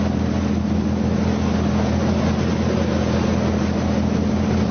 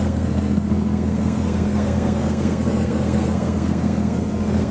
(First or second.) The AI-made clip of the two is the second